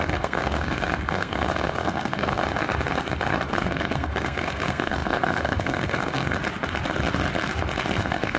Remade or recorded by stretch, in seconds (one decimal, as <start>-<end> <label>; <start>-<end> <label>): 0.0-2.4 remade; 2.4-3.5 recorded; 3.5-6.4 remade; 6.4-8.0 recorded; 8.0-8.4 remade